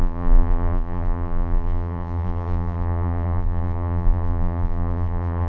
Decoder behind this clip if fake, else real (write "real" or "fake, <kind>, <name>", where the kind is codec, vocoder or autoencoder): fake, vocoder, BigVGAN v2